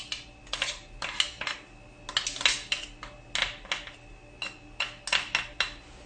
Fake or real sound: real